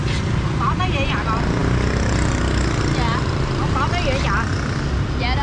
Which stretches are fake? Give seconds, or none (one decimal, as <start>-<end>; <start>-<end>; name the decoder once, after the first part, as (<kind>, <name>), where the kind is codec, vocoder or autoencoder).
none